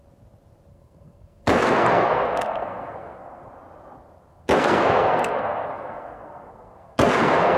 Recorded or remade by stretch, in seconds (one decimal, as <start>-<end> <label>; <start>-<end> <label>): 0.0-0.7 recorded; 0.7-3.5 remade; 3.5-4.3 recorded; 4.3-7.6 remade